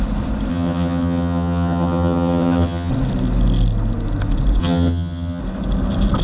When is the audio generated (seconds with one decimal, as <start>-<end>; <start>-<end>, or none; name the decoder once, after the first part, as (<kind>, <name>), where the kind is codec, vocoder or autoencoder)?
0.5-2.9 (vocoder, HiFi-GAN); 4.6-5.4